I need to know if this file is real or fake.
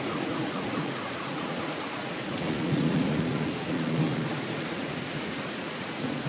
fake